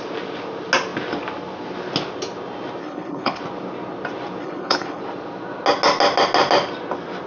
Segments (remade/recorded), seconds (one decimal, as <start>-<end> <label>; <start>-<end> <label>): 0.0-2.8 recorded; 2.8-3.4 remade; 3.4-4.4 recorded; 4.4-5.0 remade; 5.0-7.3 recorded